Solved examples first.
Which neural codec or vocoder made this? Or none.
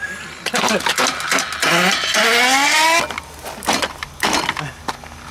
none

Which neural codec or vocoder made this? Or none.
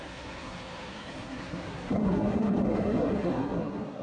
codec, SNAC